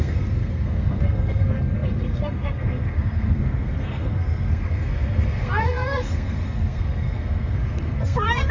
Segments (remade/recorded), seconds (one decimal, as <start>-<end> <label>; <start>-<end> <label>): 0.0-8.5 remade